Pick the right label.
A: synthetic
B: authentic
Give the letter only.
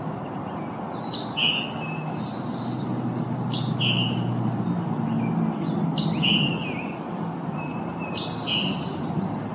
B